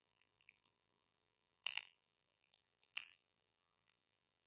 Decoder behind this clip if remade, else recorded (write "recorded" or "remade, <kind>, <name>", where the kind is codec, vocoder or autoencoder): remade, vocoder, BigVGAN v2